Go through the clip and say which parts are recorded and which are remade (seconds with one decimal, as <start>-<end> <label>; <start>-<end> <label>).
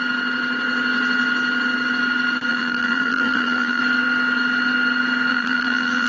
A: 0.0-2.5 recorded; 2.5-3.8 remade; 3.8-5.3 recorded; 5.3-6.1 remade